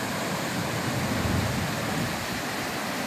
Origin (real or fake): real